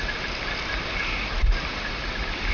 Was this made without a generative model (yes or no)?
yes